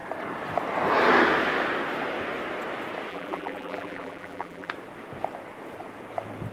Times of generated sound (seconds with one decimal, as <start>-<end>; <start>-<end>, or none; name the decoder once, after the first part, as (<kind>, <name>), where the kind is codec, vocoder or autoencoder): 3.1-4.7 (vocoder, BigVGAN v2)